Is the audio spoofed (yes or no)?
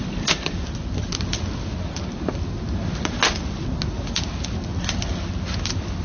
no